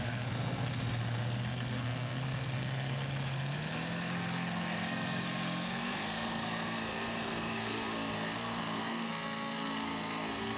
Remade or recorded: remade